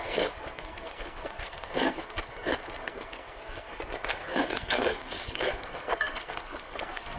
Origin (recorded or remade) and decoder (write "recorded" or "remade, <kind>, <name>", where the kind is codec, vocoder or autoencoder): remade, codec, SNAC